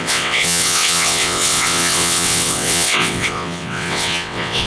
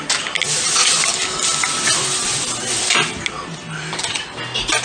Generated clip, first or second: first